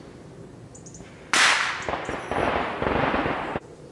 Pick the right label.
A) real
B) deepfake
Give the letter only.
A